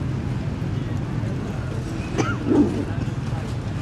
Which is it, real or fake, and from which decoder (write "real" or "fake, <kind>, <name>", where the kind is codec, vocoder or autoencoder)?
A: real